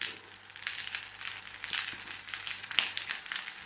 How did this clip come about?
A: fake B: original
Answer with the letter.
B